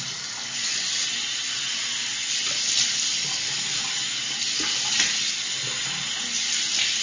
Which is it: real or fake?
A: real